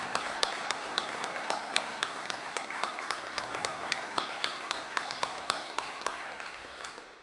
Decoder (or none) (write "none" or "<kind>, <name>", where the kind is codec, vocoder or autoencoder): codec, SNAC